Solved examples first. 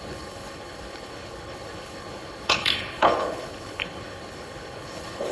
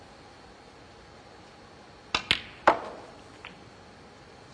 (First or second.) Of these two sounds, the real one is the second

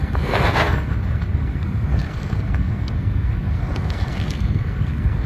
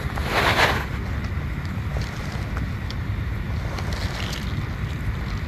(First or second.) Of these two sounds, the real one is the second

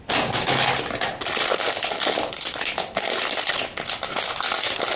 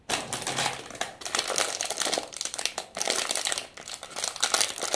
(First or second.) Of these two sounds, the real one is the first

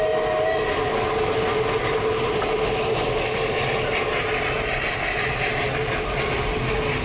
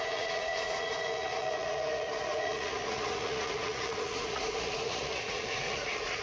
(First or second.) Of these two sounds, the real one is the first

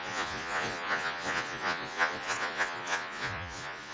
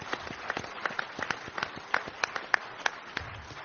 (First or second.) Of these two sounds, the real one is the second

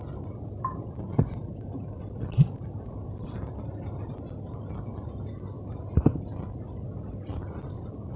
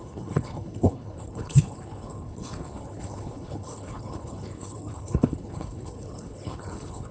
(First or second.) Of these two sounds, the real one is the first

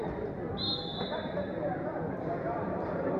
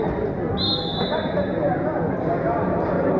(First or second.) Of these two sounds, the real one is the second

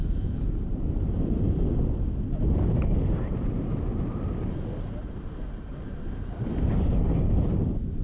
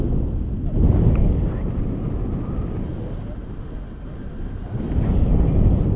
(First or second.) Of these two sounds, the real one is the second